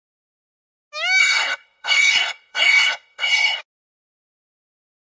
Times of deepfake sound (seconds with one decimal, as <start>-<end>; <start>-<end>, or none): 1.2-3.6